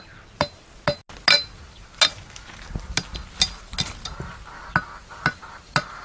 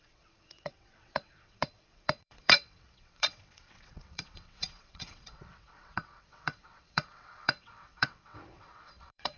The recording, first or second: first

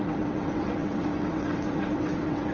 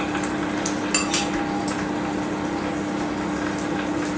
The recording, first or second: second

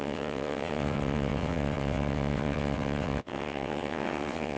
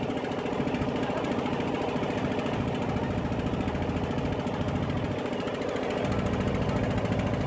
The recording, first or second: second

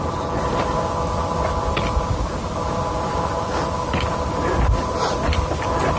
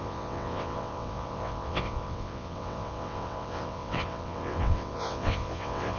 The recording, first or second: first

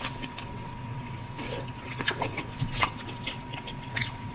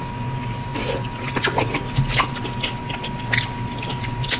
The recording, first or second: second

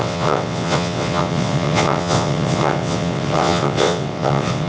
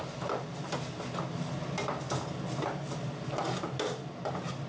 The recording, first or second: second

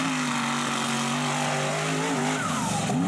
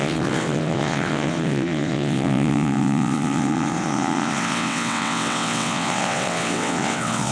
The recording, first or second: first